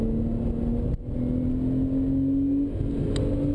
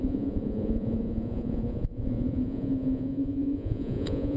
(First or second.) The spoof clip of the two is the second